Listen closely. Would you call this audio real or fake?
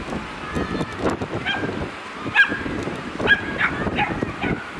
real